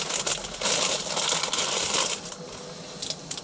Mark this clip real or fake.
real